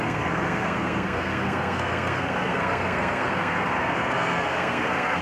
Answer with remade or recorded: remade